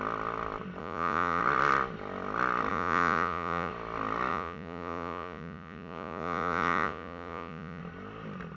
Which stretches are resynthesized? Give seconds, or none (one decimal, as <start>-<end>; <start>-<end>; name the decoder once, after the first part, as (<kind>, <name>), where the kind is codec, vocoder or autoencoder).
0.8-1.4 (vocoder, Vocos); 2.7-3.7; 4.3-7.8